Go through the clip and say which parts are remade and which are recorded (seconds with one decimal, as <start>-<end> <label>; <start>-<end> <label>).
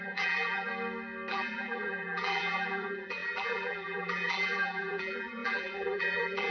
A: 0.0-0.7 remade; 0.7-1.3 recorded; 1.3-6.5 remade